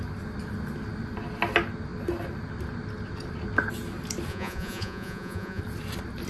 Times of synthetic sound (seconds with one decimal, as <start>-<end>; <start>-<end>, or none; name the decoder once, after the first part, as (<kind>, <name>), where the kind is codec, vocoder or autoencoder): 4.3-5.6 (vocoder, Vocos)